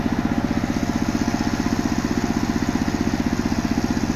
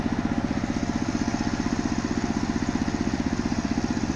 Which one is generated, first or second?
second